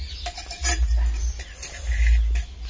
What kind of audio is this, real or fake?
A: real